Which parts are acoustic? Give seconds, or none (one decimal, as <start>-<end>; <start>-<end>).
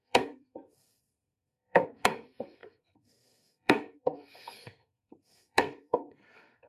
none